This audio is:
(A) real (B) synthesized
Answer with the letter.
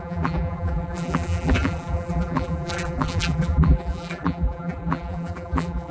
B